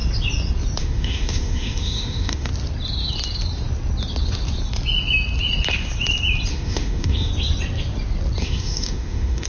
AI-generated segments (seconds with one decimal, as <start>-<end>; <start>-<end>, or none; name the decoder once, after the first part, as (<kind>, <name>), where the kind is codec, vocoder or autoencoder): 0.8-2.5 (autoencoder, DAC-VAE); 6.5-7.3; 8.4-9.5